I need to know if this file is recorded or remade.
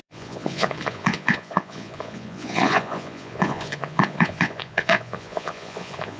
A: remade